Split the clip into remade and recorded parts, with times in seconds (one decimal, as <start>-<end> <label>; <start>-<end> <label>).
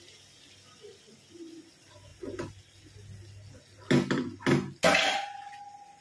0.0-6.0 recorded